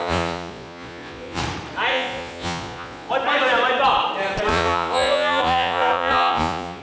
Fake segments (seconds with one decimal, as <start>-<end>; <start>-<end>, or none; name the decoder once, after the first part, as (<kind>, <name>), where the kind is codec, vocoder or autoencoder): 0.0-1.4 (vocoder, Vocos); 1.9-3.1; 4.5-6.8